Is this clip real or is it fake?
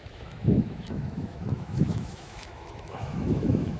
fake